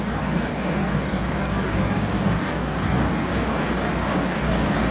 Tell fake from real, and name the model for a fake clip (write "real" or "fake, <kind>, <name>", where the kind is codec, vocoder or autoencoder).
fake, codec, DAC